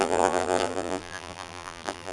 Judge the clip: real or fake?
fake